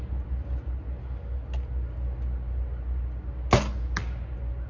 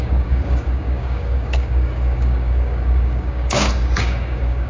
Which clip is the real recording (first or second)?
first